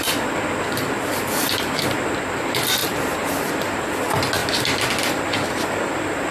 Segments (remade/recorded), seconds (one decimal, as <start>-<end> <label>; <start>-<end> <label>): 0.0-2.8 recorded; 2.8-3.9 remade; 3.9-6.3 recorded